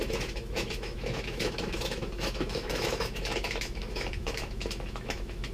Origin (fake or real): fake